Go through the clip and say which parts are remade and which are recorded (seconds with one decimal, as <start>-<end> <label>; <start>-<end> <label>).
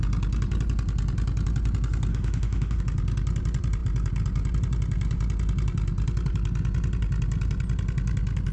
0.0-2.1 recorded; 2.1-2.8 remade; 2.8-8.5 recorded